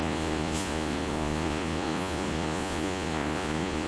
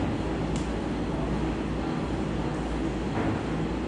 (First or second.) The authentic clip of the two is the second